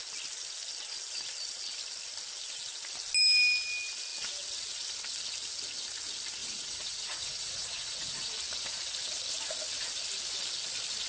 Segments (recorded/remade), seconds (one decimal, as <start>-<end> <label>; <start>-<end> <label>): 0.0-6.4 recorded; 6.4-8.3 remade; 8.3-11.1 recorded

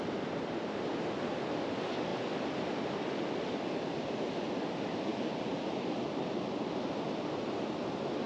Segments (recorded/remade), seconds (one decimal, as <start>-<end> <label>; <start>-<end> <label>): 0.0-2.1 recorded; 2.1-3.2 remade; 3.2-5.1 recorded; 5.1-6.1 remade; 6.1-8.3 recorded